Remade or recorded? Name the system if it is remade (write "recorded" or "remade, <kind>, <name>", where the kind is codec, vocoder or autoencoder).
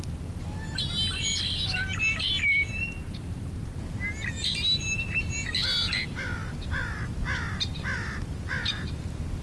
recorded